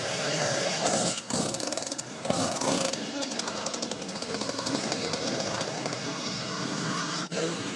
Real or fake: fake